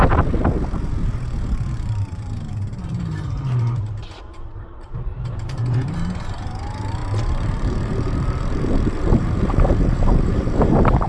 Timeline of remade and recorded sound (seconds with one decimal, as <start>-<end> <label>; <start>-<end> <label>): 0.0-1.7 recorded; 1.7-11.1 remade